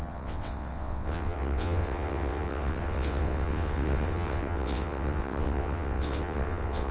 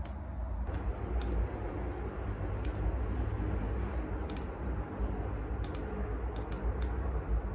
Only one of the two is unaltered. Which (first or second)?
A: second